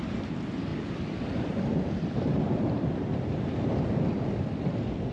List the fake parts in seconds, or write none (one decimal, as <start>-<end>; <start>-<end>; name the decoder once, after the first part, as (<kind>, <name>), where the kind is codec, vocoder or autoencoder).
0.7-3.8 (vocoder, BigVGAN v2)